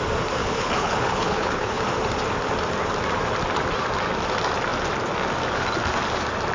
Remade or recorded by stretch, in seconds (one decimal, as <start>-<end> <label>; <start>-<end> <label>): 0.0-0.4 recorded; 0.4-1.8 remade; 1.8-6.5 recorded